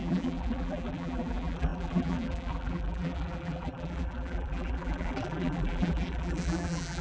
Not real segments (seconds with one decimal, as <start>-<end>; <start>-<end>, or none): 0.0-7.0